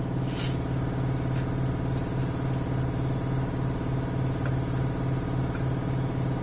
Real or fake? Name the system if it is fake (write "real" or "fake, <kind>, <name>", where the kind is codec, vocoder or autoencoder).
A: real